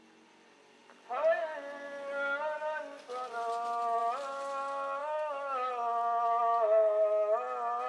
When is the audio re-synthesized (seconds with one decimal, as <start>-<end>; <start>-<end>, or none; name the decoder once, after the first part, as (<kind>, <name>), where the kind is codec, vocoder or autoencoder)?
5.0-5.7 (autoencoder, DAC-VAE)